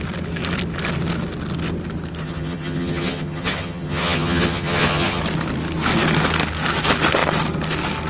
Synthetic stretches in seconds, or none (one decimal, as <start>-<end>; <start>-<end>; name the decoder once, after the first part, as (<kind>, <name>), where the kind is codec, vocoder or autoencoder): 2.2-5.2 (vocoder, HiFi-GAN)